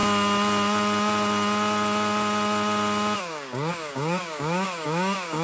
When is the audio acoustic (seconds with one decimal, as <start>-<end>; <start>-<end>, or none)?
0.0-3.2